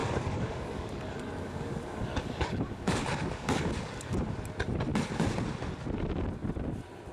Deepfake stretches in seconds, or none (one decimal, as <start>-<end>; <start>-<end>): 0.0-4.3